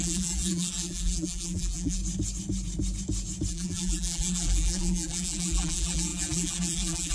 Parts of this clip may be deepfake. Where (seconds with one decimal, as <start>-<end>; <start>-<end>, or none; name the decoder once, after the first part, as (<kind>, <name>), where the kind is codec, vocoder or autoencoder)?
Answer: 0.0-2.0 (vocoder, BigVGAN v2); 3.5-7.1